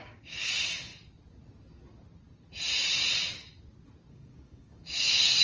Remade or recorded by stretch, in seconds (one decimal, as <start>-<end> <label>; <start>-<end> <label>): 0.0-0.9 remade; 0.9-4.1 recorded; 4.1-5.4 remade